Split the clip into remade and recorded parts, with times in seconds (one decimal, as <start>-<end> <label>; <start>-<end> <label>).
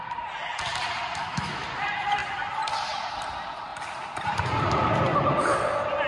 0.0-1.2 recorded; 1.2-1.7 remade; 1.7-6.1 recorded